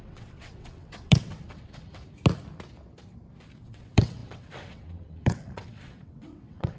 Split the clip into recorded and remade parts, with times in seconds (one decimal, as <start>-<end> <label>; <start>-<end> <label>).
0.0-2.0 remade; 2.0-3.6 recorded; 3.6-6.8 remade